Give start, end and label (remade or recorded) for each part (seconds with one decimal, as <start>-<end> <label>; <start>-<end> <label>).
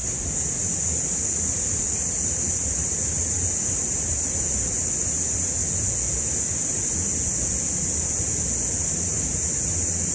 0.0-5.6 remade; 5.6-6.3 recorded; 6.3-7.1 remade; 7.1-8.8 recorded; 8.8-10.1 remade